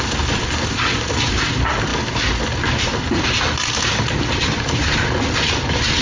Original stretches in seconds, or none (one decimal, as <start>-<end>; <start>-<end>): 0.0-6.0